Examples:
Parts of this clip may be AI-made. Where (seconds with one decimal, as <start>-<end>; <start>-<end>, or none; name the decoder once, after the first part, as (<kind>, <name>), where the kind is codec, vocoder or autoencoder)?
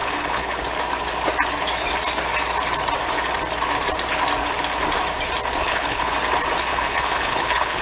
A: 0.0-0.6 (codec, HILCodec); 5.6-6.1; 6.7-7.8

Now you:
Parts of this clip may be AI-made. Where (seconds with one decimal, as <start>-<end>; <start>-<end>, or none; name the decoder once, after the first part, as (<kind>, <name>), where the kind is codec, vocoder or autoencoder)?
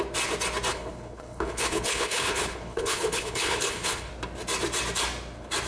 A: 0.7-4.1 (codec, HILCodec)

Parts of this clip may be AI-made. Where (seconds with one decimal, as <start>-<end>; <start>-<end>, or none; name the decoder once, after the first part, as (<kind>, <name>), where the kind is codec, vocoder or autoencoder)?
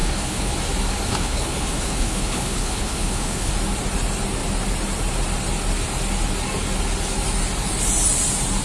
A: 0.0-0.5 (codec, HILCodec); 1.1-3.5